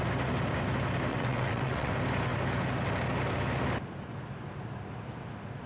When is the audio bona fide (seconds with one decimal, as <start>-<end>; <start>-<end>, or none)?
0.0-1.1; 1.9-5.7